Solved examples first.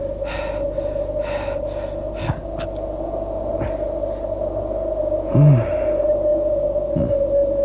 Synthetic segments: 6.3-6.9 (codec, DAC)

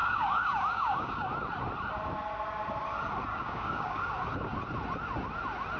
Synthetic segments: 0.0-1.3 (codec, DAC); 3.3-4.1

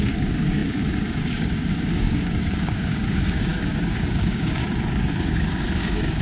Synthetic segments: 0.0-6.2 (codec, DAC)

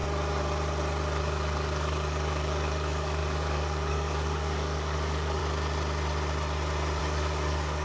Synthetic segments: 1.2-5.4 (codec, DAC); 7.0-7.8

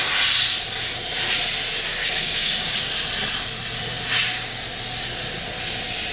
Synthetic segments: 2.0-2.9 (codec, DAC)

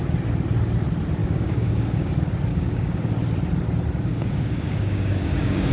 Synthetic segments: 1.2-2.1 (codec, DAC); 2.5-3.1; 4.1-5.7